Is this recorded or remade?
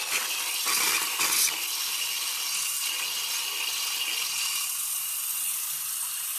recorded